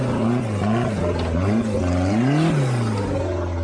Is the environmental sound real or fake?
real